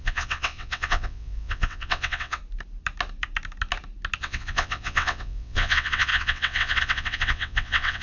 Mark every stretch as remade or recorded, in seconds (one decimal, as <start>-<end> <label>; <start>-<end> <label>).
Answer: 0.0-2.4 remade; 2.4-4.2 recorded; 4.2-8.0 remade